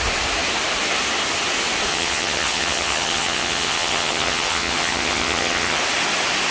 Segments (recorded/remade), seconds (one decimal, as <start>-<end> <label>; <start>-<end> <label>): 0.0-1.9 recorded; 1.9-5.8 remade; 5.8-6.5 recorded